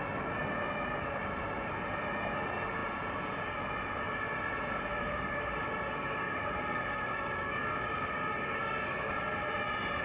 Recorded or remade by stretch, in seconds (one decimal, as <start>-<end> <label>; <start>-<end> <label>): 0.0-4.9 recorded; 4.9-9.2 remade; 9.2-10.0 recorded